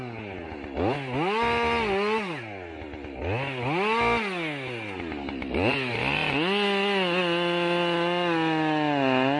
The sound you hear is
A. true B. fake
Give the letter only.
A